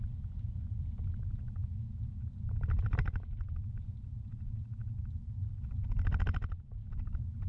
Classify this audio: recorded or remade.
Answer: recorded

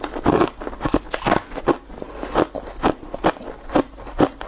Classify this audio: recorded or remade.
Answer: recorded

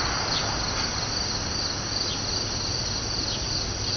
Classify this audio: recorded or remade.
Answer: recorded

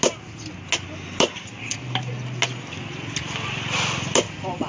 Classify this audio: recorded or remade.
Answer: recorded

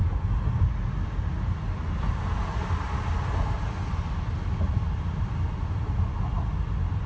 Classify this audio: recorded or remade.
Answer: recorded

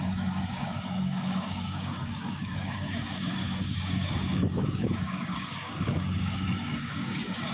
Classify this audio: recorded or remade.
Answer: remade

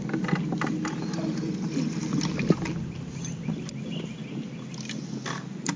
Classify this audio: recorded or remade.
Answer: recorded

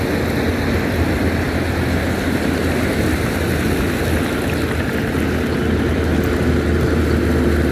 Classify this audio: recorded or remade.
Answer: recorded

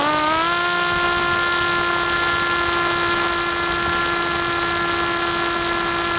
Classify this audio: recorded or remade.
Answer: recorded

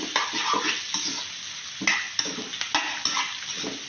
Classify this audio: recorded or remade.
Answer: recorded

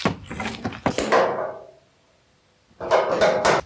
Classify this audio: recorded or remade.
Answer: recorded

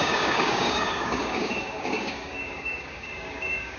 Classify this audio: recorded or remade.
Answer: remade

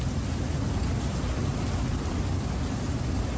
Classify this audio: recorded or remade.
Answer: recorded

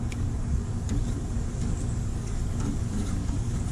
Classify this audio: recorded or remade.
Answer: remade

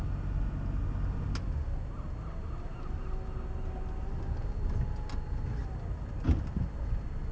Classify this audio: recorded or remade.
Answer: recorded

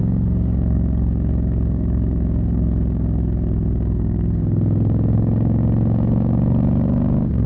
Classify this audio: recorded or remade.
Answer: remade